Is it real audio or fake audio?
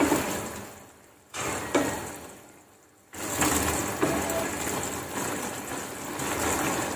real